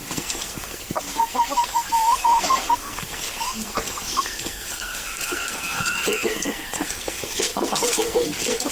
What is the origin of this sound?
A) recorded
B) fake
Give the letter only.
B